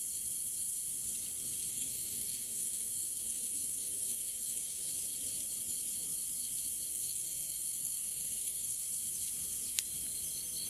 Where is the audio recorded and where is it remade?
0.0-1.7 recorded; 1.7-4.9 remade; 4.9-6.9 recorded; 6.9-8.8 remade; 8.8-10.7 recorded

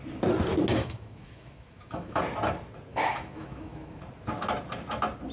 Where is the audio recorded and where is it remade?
0.0-0.7 recorded; 0.7-2.2 remade; 2.2-2.9 recorded; 2.9-4.0 remade; 4.0-5.3 recorded

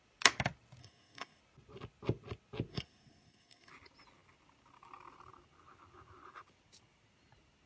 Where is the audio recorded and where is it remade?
0.0-0.8 recorded; 0.8-1.4 remade; 1.4-2.7 recorded; 2.7-3.7 remade; 3.7-7.7 recorded

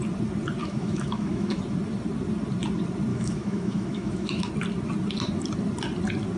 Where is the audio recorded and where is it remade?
0.0-0.6 recorded; 0.6-1.6 remade; 1.6-3.1 recorded; 3.1-4.5 remade; 4.5-6.4 recorded

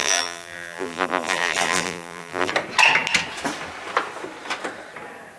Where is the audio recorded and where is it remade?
0.0-2.5 remade; 2.5-5.4 recorded

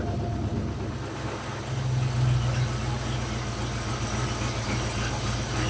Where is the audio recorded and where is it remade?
0.0-5.7 recorded